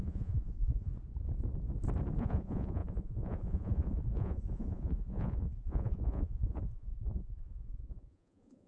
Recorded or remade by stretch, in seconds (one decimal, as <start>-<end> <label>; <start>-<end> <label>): 0.0-0.9 remade; 0.9-2.2 recorded; 2.2-8.7 remade